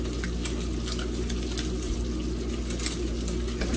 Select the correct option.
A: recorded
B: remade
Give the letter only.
A